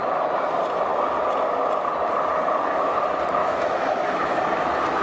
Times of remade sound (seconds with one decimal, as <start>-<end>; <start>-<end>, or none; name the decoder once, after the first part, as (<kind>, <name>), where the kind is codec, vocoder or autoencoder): 3.4-4.4 (autoencoder, DAC-VAE)